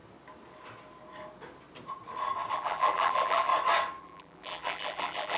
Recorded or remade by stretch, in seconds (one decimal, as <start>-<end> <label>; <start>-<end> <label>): 0.0-2.5 recorded; 2.5-3.5 remade; 3.5-4.0 recorded; 4.0-5.4 remade